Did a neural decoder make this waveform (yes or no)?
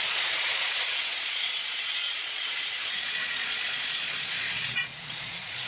yes